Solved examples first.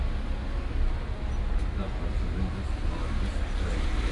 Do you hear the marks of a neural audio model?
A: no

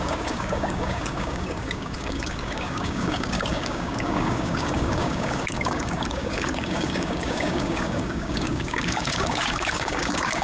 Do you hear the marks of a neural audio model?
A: yes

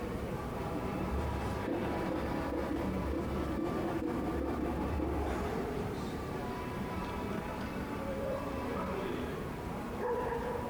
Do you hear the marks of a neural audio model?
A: yes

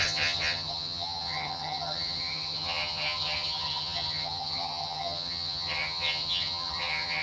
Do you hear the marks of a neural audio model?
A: yes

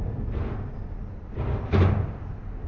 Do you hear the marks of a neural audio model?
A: no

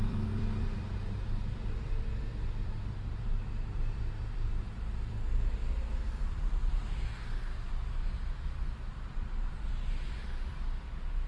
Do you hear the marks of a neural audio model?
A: yes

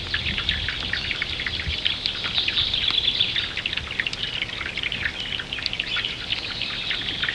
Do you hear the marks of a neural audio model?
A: no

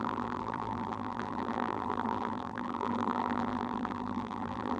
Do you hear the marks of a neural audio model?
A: yes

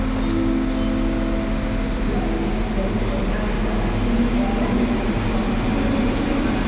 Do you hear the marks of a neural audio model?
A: no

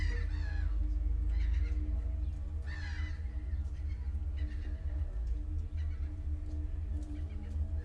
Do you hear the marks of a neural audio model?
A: no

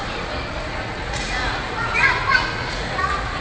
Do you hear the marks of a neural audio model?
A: yes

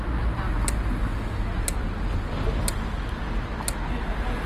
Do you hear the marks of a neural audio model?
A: no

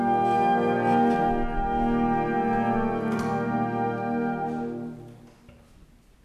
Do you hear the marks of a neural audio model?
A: no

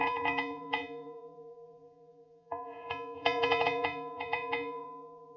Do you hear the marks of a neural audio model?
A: yes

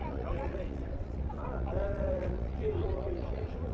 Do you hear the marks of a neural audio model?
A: yes